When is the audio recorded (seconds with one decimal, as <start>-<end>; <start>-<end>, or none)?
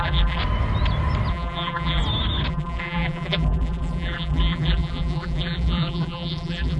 0.4-1.3; 2.0-2.5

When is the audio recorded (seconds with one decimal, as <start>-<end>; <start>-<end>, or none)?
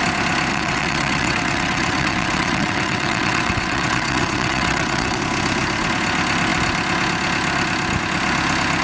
0.0-0.5; 5.2-8.8